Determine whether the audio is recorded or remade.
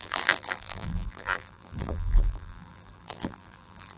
remade